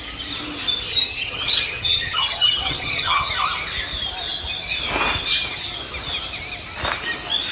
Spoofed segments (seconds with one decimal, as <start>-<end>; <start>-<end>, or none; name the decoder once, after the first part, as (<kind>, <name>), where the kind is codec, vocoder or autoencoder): 0.9-3.3 (vocoder, HiFi-GAN)